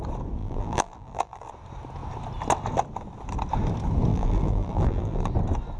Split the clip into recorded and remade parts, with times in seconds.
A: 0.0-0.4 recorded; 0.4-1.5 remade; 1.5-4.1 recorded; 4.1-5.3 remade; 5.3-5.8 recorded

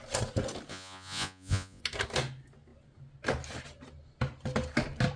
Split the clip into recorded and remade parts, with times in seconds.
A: 0.0-0.7 recorded; 0.7-1.8 remade; 1.8-5.2 recorded

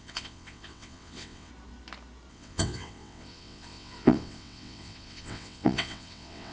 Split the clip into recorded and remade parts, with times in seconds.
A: 0.0-1.5 remade; 1.5-2.3 recorded; 2.3-6.5 remade